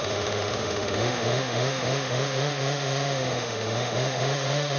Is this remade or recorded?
remade